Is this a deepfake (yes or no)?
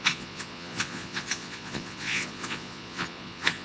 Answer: yes